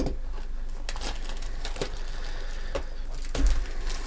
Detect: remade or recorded recorded